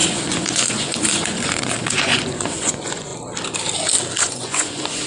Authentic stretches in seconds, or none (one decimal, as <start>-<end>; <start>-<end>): 3.1-4.2